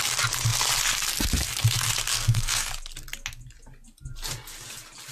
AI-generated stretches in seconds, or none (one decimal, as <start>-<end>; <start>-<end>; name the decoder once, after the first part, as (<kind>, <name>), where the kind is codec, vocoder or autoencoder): 2.1-2.7 (codec, SNAC)